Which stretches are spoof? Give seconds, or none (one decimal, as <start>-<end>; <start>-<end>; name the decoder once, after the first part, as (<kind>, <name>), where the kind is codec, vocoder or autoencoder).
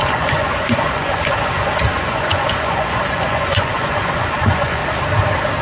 0.0-4.8 (vocoder, Vocos)